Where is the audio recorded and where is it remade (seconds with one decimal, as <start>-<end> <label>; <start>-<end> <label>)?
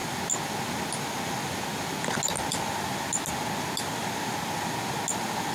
0.0-5.5 recorded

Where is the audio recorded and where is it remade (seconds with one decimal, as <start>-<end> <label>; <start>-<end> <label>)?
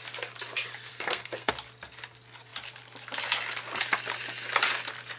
0.0-0.9 recorded; 0.9-1.5 remade; 1.5-5.2 recorded